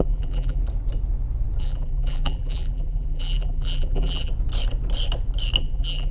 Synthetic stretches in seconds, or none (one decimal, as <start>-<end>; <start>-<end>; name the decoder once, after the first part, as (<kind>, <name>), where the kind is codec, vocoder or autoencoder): 0.0-0.6 (vocoder, BigVGAN v2); 1.6-4.3; 5.6-6.1